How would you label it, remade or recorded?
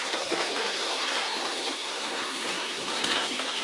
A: remade